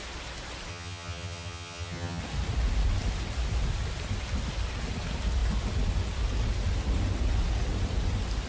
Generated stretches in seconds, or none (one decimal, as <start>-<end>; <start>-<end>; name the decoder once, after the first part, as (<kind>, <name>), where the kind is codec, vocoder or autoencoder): 0.7-2.2 (vocoder, HiFi-GAN)